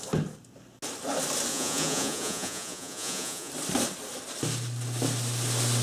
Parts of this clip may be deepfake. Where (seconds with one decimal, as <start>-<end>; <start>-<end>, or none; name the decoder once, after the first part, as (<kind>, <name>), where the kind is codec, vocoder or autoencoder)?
1.5-3.5 (vocoder, Vocos)